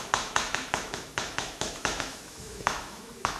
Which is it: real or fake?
fake